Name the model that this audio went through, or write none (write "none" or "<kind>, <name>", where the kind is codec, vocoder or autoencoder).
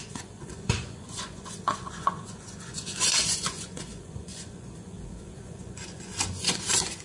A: vocoder, Vocos